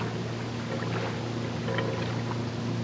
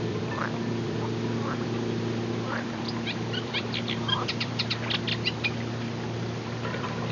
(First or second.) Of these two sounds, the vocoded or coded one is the second